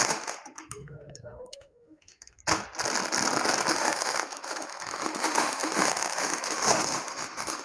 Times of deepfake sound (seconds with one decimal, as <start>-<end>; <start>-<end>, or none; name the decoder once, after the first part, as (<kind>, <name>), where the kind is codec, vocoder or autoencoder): 0.0-2.4 (autoencoder, DAC-VAE); 3.7-7.6